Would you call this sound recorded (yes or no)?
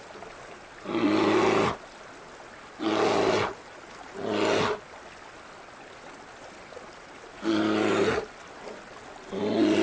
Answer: yes